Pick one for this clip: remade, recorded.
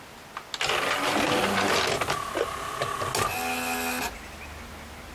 recorded